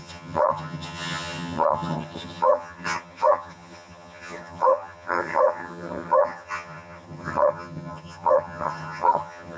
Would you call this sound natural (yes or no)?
no